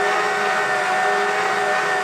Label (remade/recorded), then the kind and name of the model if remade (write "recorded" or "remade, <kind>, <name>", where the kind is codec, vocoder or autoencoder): recorded